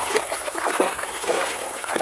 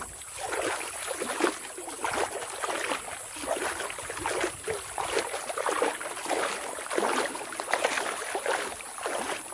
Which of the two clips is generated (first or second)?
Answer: first